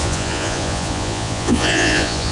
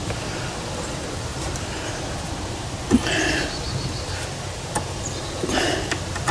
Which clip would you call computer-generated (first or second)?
first